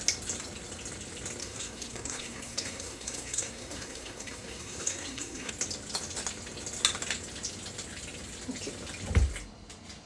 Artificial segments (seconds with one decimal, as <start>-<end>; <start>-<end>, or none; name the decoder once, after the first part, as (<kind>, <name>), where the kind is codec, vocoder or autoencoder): 1.4-5.5 (codec, SNAC)